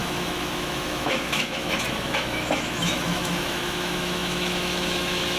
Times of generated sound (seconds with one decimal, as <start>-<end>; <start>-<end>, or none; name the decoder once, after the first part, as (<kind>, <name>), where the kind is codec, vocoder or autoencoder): 0.0-5.4 (autoencoder, DAC-VAE)